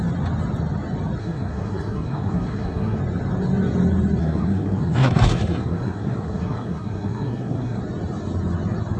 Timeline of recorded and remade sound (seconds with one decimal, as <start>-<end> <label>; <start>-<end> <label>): 0.0-1.2 recorded; 1.2-3.0 remade; 3.0-4.2 recorded; 4.2-7.8 remade; 7.8-9.0 recorded